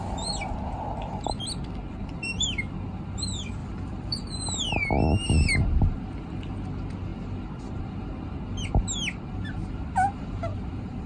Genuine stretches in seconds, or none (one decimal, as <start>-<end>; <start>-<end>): 0.0-3.6; 4.4-9.6